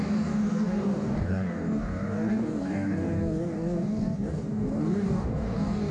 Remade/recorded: remade